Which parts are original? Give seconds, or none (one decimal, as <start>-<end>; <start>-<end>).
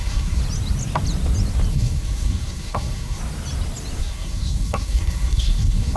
0.4-1.7; 3.2-4.0